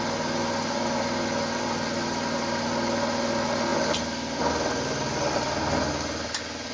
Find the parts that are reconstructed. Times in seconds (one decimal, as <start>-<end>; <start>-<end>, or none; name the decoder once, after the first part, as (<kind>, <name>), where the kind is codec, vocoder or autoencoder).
none